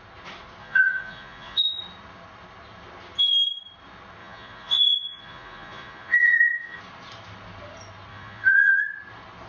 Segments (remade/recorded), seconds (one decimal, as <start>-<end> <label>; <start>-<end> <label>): 0.0-0.6 recorded; 0.6-1.6 remade; 1.6-4.2 recorded; 4.2-6.8 remade; 6.8-8.1 recorded; 8.1-8.8 remade; 8.8-9.5 recorded